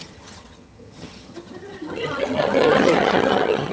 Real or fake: fake